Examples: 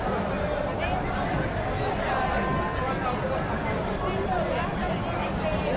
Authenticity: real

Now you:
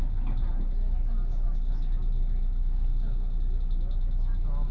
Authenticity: real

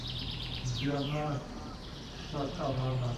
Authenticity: fake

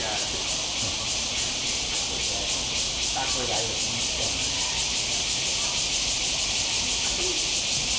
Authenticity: real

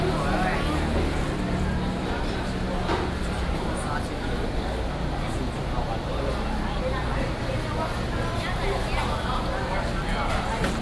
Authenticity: real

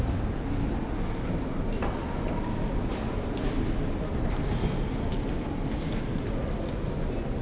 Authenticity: real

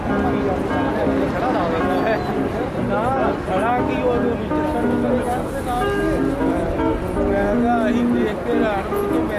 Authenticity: real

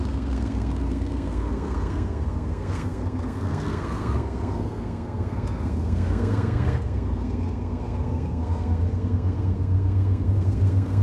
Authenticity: fake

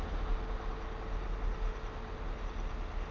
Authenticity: real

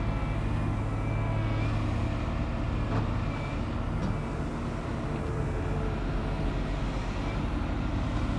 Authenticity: real